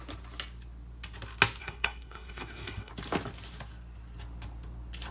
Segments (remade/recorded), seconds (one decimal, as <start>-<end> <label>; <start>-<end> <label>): 0.0-1.6 recorded; 1.6-2.9 remade; 2.9-5.1 recorded